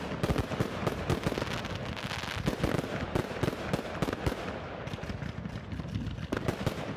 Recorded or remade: recorded